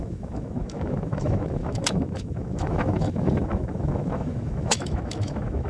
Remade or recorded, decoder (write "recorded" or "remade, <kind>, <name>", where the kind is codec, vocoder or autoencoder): remade, autoencoder, DAC-VAE